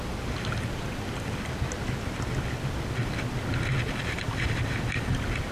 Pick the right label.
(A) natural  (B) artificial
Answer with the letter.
A